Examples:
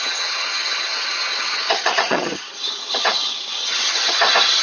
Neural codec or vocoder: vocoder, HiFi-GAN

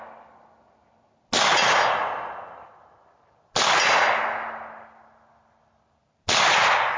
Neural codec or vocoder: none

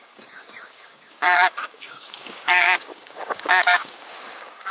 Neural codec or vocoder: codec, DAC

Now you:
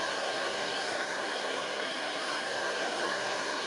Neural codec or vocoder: codec, SNAC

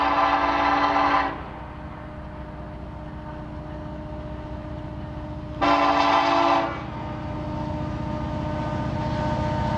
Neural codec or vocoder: none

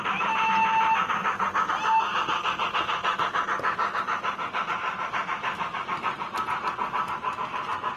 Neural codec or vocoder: none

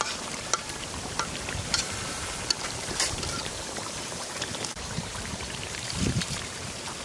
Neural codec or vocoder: vocoder, BigVGAN v2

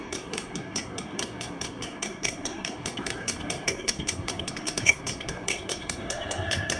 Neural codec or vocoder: codec, SNAC